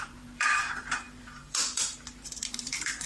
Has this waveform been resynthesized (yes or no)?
yes